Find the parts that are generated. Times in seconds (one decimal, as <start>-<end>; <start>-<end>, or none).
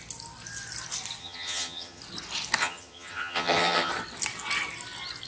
1.2-2.0; 2.6-3.9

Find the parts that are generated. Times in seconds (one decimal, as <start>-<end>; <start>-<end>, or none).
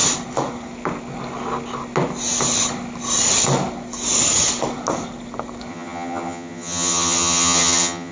5.7-8.1